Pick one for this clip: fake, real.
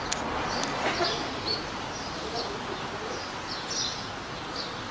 real